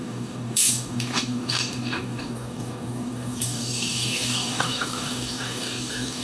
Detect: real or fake fake